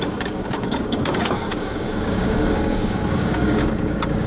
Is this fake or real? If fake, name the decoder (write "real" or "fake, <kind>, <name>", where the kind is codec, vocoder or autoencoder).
fake, codec, DAC